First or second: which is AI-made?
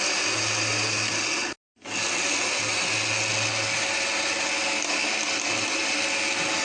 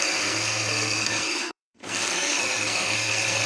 second